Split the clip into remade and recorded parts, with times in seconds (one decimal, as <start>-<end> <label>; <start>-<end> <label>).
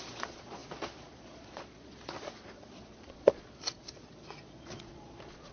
0.0-5.5 remade